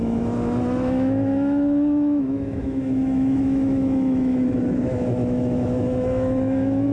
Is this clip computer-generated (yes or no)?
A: yes